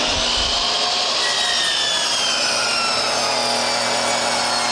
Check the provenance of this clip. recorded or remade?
recorded